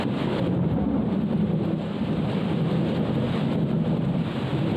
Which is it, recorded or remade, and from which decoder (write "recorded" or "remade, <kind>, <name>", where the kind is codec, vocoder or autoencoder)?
recorded